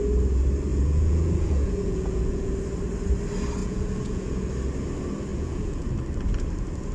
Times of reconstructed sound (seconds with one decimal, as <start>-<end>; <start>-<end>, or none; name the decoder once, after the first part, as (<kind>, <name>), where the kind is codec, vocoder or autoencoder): 0.7-2.5 (vocoder, Vocos); 3.6-4.5; 5.3-5.9